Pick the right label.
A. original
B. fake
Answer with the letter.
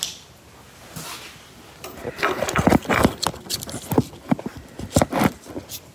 A